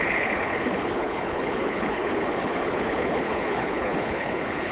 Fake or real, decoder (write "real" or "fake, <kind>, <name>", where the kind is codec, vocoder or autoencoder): fake, codec, HILCodec